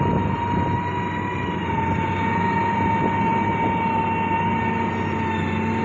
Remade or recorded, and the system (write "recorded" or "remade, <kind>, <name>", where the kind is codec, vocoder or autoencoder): recorded